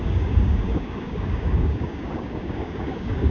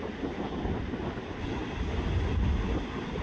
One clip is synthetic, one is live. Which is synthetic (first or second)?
first